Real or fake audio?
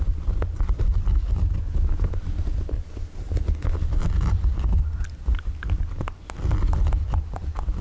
real